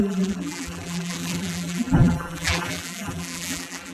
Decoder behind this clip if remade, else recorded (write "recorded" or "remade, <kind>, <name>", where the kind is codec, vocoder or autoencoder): remade, vocoder, BigVGAN v2